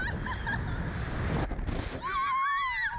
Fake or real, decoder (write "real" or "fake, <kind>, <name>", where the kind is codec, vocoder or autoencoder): real